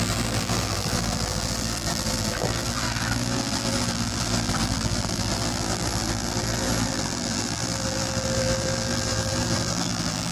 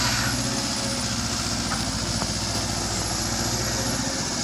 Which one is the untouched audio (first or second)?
second